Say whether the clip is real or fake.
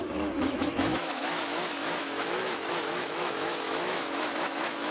fake